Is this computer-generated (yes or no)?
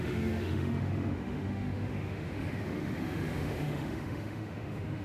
yes